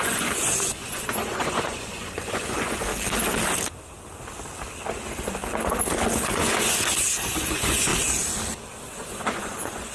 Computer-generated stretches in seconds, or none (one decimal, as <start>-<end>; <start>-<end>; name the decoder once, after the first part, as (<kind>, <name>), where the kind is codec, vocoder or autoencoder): 0.0-2.9 (vocoder, Vocos); 6.1-7.9; 8.7-9.9